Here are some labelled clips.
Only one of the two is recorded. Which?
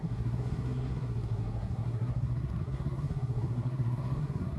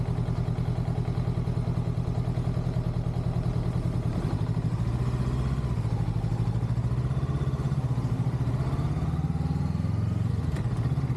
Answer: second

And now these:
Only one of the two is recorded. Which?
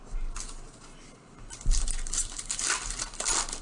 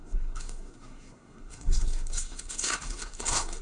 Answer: first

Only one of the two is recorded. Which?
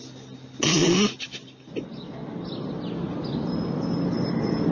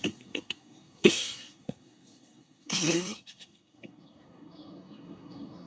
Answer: first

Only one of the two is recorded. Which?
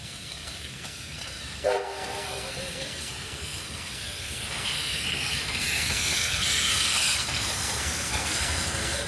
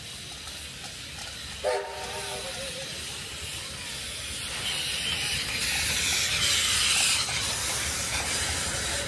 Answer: second